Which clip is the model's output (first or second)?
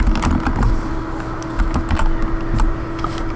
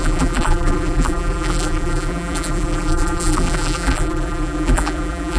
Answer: second